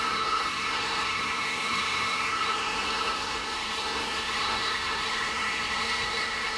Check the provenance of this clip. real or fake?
fake